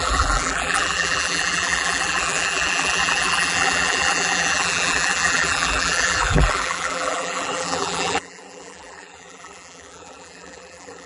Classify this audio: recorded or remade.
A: remade